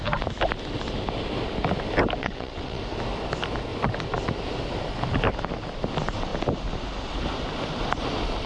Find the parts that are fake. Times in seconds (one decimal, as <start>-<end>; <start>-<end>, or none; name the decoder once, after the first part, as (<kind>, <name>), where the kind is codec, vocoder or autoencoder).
2.2-2.8 (vocoder, WaveNeXt)